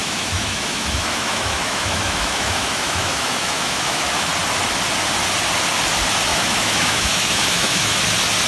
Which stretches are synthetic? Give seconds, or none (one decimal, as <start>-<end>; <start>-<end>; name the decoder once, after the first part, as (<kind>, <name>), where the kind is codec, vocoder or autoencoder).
0.0-4.3 (autoencoder, DAC-VAE); 6.3-8.0